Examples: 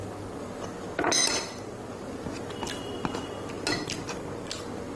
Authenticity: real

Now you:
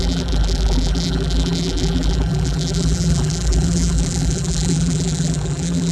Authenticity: fake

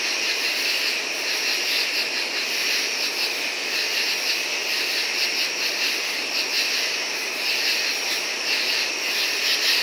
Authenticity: real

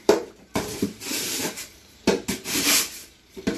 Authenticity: fake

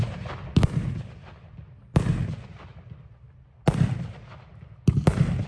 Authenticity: real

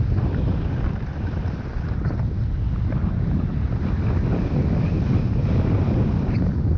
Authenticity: real